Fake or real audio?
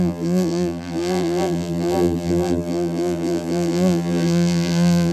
fake